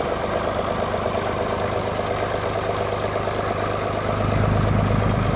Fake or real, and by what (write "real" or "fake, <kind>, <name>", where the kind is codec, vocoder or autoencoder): real